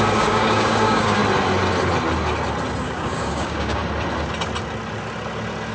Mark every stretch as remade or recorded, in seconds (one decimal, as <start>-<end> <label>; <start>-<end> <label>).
0.0-1.2 remade; 1.2-2.8 recorded; 2.8-3.8 remade; 3.8-5.7 recorded